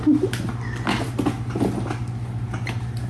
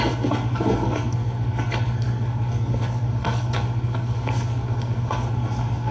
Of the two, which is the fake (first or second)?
second